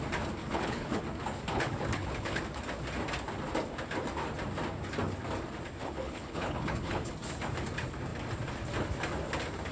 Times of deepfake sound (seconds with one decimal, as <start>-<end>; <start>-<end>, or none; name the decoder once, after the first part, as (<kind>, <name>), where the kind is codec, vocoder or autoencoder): 0.4-1.0 (codec, HILCodec); 1.5-2.4; 5.8-7.1